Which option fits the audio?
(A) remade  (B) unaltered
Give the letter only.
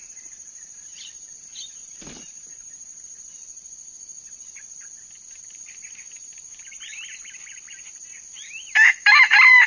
A